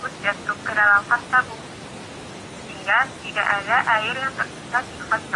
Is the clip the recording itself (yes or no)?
yes